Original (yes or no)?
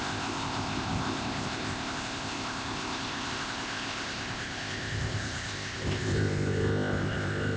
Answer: no